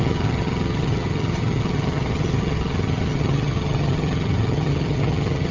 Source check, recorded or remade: remade